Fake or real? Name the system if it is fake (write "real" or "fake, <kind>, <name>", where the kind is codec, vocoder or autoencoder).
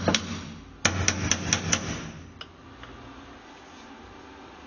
real